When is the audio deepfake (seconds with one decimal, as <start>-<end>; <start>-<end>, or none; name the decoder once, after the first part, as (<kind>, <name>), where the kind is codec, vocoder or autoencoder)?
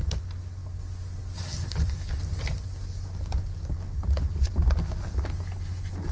none